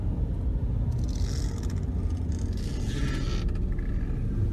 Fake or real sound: real